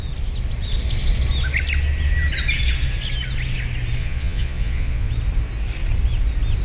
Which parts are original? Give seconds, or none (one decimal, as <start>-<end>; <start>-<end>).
0.0-4.0; 5.1-6.6